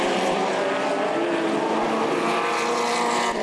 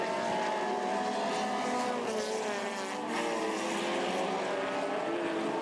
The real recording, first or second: second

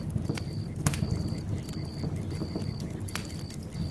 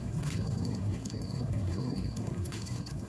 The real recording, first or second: first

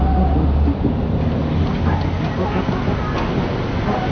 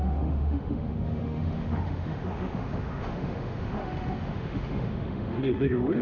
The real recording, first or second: first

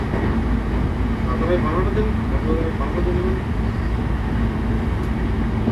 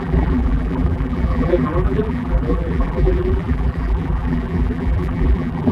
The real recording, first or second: first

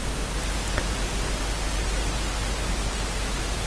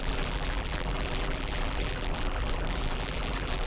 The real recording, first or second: first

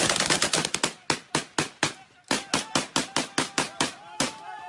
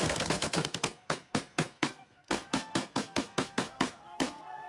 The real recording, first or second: first